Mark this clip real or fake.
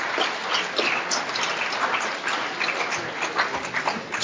real